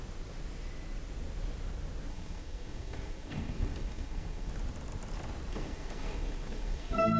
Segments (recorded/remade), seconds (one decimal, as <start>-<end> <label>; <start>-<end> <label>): 0.0-2.1 recorded; 2.1-4.5 remade; 4.5-5.5 recorded; 5.5-7.2 remade